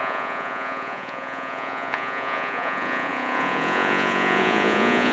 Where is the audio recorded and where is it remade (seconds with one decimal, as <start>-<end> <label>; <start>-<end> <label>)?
0.0-5.1 remade